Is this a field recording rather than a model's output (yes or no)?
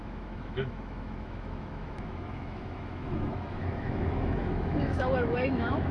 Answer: no